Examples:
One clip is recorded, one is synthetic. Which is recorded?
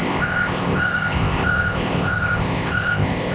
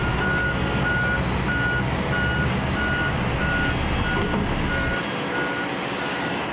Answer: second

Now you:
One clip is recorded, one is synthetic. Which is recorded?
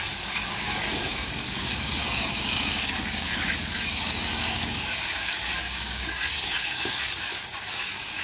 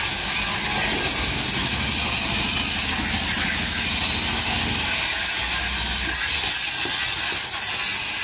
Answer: second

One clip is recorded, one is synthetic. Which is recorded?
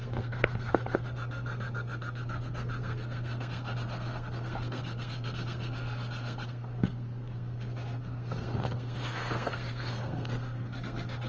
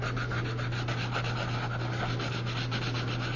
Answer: second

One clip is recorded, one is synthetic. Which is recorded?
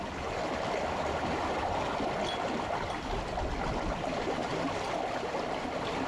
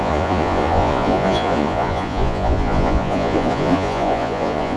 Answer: first